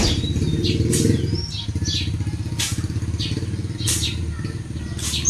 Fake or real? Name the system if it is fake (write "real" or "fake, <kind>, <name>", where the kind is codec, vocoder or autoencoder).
real